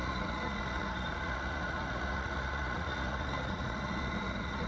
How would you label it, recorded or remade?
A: remade